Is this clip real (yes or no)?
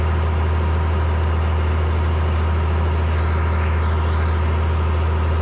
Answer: yes